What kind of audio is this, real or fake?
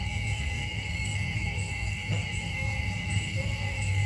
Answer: fake